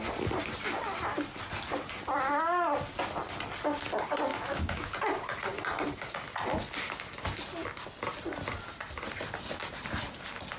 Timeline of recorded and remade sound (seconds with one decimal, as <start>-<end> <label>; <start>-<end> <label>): 0.0-4.3 recorded; 4.3-4.9 remade; 4.9-10.6 recorded